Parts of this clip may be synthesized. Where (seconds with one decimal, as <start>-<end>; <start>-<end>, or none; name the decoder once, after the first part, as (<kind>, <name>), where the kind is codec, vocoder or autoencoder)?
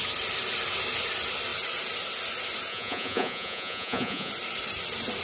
2.7-4.3 (vocoder, Vocos)